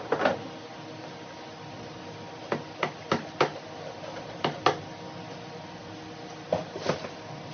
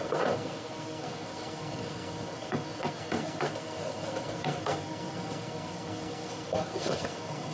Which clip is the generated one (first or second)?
second